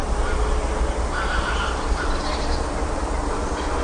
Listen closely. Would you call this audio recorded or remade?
recorded